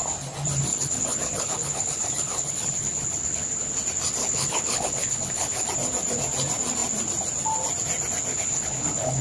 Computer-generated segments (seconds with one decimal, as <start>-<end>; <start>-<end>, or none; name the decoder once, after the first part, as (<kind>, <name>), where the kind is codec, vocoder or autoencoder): 0.7-3.7 (codec, HILCodec); 4.2-5.7; 8.3-9.2